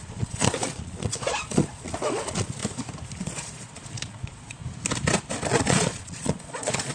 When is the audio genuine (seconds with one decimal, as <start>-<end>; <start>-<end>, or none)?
2.6-3.2; 4.6-5.5